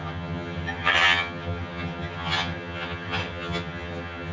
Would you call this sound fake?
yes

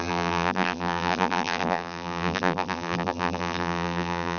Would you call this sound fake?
yes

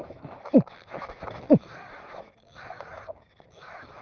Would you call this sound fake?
yes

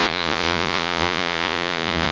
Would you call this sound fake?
yes